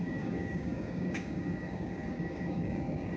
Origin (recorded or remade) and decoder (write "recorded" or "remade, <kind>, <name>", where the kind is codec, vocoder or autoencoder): remade, codec, DAC